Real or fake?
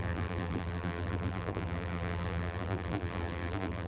fake